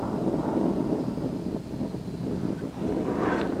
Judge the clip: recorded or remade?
recorded